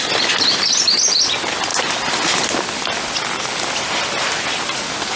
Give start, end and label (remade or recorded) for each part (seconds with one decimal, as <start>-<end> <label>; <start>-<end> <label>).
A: 0.0-5.2 recorded